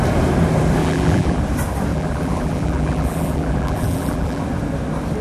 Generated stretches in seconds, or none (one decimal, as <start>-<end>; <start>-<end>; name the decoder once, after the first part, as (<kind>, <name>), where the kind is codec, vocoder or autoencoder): 0.8-1.4 (vocoder, BigVGAN v2); 1.9-4.4